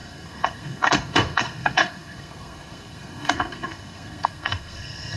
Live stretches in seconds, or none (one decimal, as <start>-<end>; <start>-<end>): none